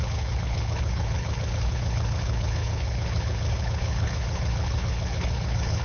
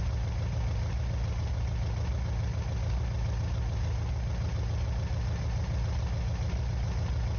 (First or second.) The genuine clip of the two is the second